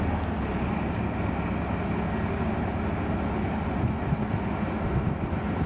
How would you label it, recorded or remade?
recorded